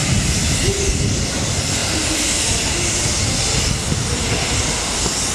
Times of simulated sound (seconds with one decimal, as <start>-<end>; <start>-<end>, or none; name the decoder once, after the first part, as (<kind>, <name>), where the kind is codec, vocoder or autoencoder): 0.0-0.5 (vocoder, BigVGAN v2)